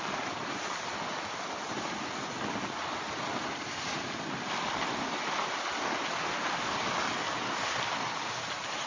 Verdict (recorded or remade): recorded